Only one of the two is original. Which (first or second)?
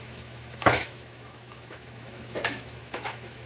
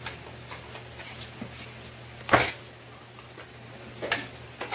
second